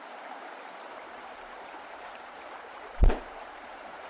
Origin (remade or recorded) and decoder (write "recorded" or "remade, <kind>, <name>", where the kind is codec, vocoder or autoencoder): remade, vocoder, BigVGAN v2